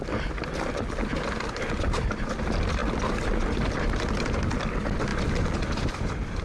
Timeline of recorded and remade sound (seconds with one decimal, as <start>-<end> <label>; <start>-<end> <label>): 0.0-5.1 recorded; 5.1-6.4 remade